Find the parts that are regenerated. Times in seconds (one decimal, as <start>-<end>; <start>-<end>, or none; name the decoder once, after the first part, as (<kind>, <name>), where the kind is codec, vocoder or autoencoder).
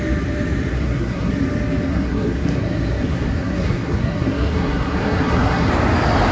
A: 0.7-1.3 (codec, SNAC); 1.9-5.7